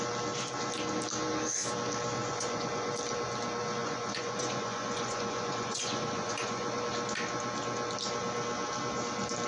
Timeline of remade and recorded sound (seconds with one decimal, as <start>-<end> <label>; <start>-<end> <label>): 0.0-2.2 recorded; 2.2-2.9 remade; 2.9-3.8 recorded; 3.8-6.8 remade; 6.8-9.5 recorded